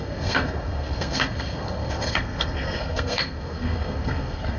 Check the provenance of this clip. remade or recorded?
remade